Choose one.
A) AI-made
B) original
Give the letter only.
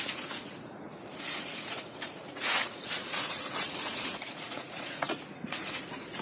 A